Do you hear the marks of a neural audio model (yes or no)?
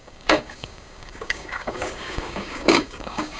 yes